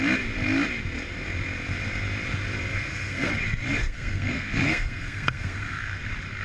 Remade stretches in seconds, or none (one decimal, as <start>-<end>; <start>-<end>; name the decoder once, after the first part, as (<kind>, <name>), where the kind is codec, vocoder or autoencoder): 2.7-3.3 (codec, SNAC); 3.8-6.0